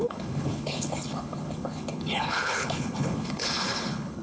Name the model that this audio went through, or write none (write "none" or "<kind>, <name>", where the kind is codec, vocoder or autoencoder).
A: codec, HILCodec